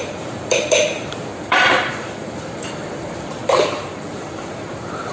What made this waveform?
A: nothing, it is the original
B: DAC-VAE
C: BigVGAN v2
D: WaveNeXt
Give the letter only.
C